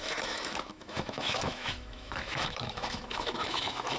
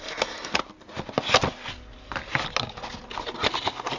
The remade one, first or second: first